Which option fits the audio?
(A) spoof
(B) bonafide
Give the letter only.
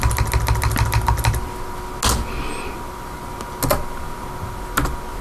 B